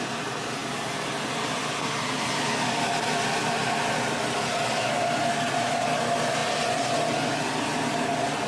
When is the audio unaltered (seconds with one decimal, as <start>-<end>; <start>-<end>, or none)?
0.0-8.5